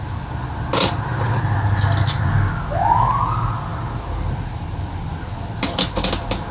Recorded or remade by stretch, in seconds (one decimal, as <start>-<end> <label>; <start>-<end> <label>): 0.0-6.5 recorded